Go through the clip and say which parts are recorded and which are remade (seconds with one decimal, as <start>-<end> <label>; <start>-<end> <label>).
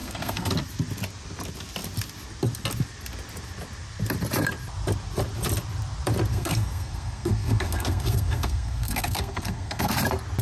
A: 0.0-0.5 remade; 0.5-6.3 recorded; 6.3-9.9 remade; 9.9-10.4 recorded